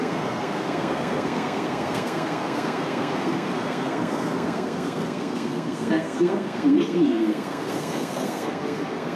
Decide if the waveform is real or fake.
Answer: fake